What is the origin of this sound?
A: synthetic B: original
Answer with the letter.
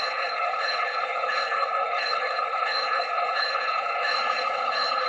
A